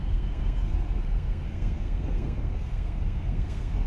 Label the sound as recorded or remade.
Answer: remade